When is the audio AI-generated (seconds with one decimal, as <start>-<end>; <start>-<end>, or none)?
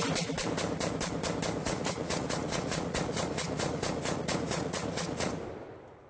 1.6-5.3